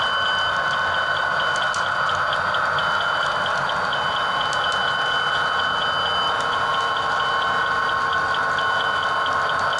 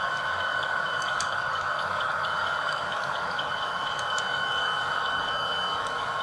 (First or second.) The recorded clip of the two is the first